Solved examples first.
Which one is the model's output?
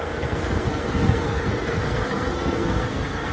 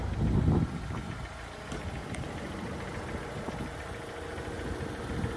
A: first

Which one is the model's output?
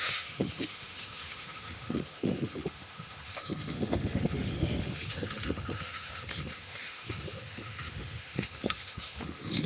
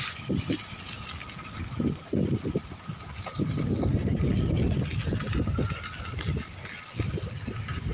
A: first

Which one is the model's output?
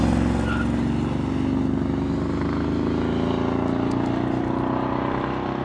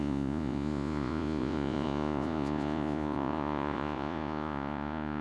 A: second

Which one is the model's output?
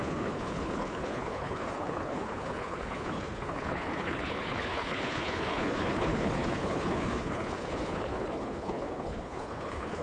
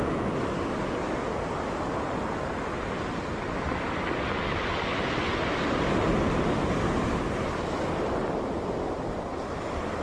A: first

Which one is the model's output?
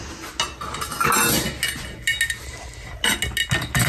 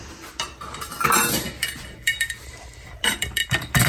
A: second